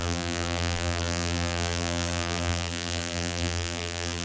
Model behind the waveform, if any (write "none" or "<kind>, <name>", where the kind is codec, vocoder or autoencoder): vocoder, BigVGAN v2